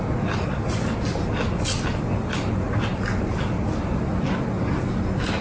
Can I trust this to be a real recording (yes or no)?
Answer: yes